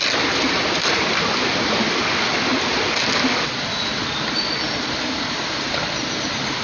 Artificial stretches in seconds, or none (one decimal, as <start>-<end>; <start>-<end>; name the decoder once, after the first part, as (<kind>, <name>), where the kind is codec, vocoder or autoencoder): none